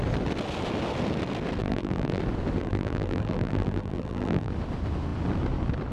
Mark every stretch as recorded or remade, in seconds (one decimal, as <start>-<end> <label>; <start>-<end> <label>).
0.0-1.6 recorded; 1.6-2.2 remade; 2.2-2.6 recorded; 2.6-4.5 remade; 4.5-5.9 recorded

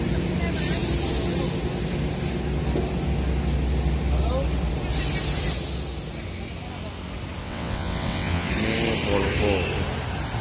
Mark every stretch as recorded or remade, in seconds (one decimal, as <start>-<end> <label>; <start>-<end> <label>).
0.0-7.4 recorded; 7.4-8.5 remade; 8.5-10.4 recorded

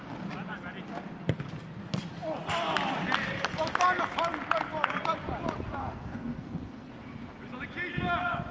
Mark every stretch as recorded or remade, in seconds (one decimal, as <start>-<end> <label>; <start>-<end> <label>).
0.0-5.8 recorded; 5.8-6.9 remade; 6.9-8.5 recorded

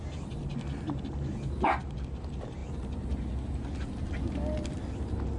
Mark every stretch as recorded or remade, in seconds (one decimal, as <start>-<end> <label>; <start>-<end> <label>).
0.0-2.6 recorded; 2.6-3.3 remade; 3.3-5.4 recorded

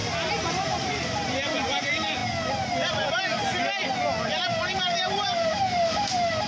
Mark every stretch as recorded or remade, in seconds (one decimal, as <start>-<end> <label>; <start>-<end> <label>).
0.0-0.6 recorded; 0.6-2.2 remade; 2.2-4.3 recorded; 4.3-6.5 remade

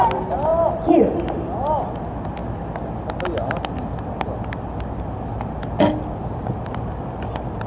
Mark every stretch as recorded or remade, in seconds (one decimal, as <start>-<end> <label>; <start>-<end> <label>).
0.0-0.5 recorded; 0.5-1.9 remade; 1.9-7.7 recorded